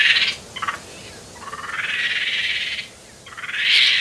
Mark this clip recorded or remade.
recorded